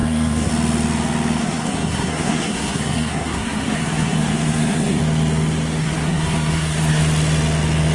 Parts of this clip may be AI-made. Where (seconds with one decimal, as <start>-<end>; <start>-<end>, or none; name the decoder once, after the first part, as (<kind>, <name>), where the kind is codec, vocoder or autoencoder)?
0.0-0.5 (codec, SNAC); 1.4-5.0; 5.8-7.0